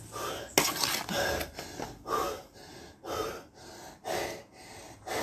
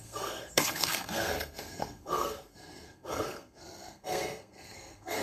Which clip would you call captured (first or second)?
first